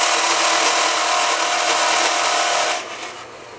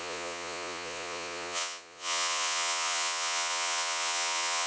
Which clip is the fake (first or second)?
second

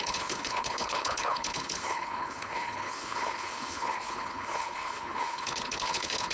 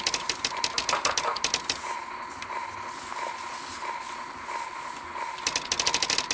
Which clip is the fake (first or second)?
first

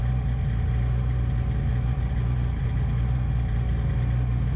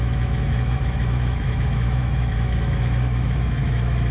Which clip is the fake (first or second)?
second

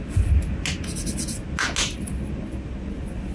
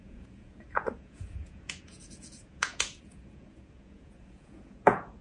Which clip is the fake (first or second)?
second